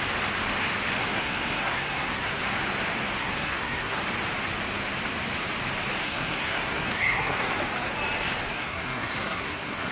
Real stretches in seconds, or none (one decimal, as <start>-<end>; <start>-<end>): 0.0-1.0; 2.4-3.2; 4.0-6.0; 7.5-8.5